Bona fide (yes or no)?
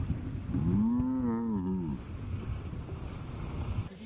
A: yes